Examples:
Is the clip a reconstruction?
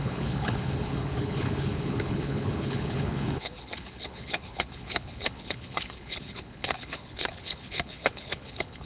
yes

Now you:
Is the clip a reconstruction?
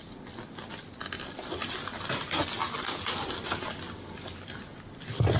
no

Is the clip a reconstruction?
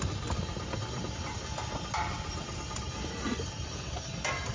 yes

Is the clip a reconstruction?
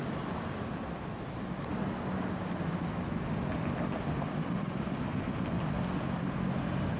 no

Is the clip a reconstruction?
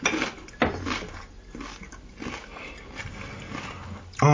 no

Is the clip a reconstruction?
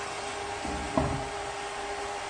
no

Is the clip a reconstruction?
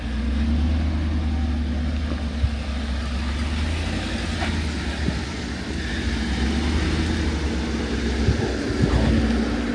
no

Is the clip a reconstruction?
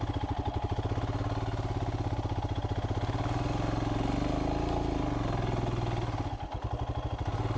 no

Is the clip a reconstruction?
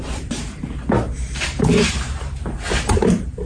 yes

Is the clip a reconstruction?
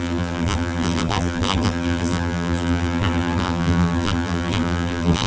yes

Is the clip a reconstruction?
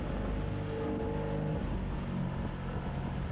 no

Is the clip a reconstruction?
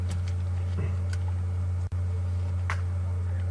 no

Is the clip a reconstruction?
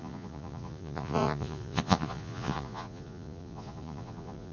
yes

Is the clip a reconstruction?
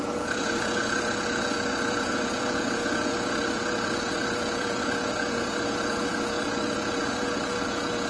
yes